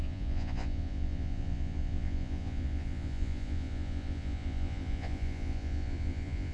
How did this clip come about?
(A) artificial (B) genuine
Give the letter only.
A